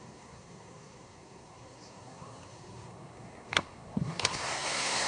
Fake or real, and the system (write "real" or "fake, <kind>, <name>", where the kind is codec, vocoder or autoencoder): fake, codec, SNAC